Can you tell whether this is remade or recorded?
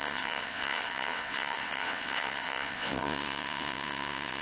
remade